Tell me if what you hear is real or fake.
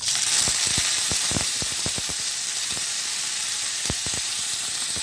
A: fake